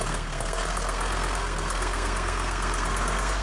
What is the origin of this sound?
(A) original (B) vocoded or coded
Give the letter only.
B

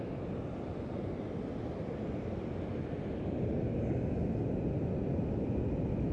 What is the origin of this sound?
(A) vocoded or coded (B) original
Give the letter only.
B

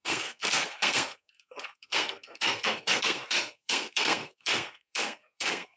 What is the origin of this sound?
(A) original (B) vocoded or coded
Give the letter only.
B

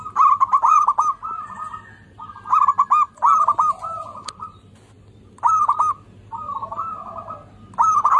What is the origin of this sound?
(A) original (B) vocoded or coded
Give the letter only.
A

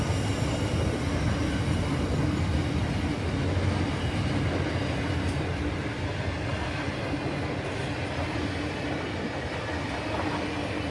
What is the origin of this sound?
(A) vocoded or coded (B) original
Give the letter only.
B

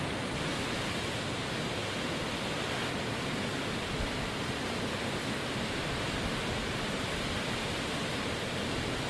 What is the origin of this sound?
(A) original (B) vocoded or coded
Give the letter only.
A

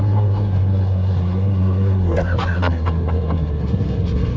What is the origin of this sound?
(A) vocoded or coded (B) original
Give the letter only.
A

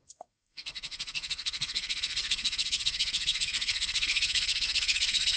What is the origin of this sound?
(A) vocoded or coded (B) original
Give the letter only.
A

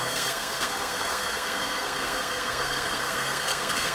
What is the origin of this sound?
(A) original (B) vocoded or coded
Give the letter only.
B